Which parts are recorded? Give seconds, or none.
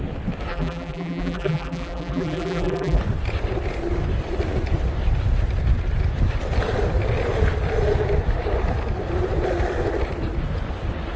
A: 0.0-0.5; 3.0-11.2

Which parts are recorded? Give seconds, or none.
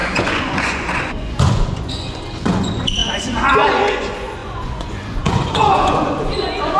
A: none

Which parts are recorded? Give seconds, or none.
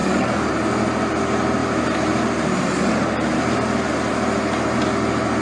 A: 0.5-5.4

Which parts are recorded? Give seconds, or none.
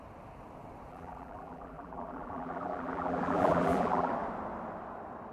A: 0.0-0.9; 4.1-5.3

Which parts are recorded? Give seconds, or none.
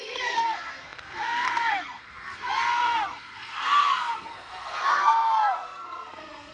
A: none